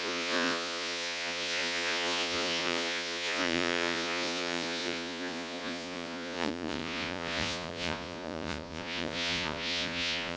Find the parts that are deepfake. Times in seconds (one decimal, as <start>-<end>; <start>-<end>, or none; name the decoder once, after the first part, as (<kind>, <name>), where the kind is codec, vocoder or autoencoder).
0.0-10.4 (vocoder, Vocos)